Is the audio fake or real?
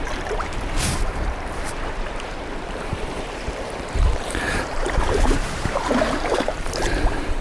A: fake